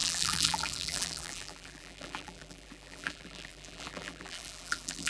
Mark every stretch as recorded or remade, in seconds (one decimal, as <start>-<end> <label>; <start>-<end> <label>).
0.0-5.1 remade